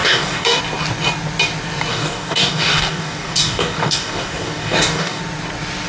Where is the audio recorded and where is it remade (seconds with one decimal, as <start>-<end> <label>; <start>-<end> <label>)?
0.0-0.6 remade; 0.6-1.9 recorded; 1.9-5.2 remade; 5.2-5.9 recorded